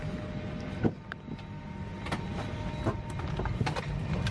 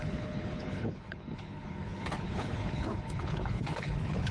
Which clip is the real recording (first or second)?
first